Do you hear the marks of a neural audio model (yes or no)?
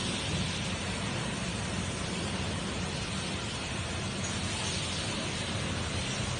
no